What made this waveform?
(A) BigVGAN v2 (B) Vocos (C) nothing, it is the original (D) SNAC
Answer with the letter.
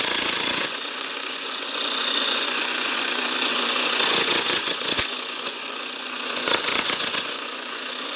B